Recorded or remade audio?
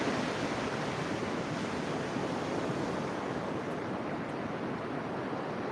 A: recorded